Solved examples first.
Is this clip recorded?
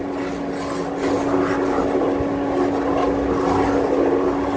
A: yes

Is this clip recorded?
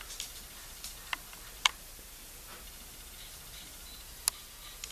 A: yes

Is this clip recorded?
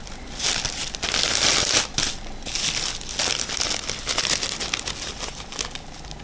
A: yes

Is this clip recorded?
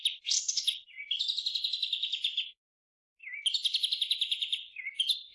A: yes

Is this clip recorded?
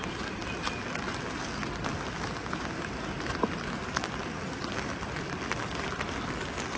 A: yes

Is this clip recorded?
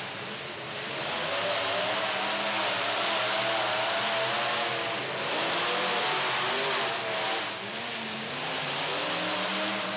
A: yes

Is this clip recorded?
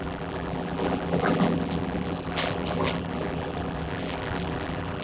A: no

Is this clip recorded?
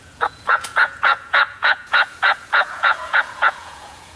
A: no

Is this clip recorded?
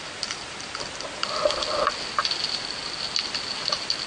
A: yes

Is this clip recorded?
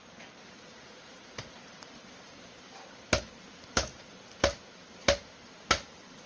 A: yes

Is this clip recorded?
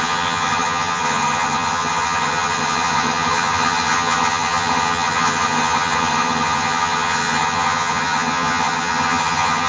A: no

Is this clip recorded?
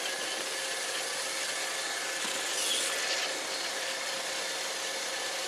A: yes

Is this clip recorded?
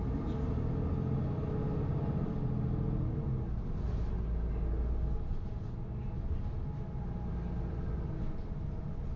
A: yes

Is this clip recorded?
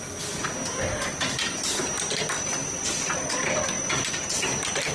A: yes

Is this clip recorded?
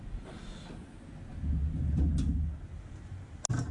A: yes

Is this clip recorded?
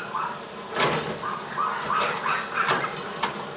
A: yes